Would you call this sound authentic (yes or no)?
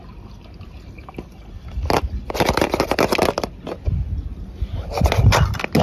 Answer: yes